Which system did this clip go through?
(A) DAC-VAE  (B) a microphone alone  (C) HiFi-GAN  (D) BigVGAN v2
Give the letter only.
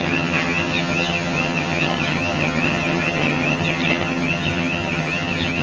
C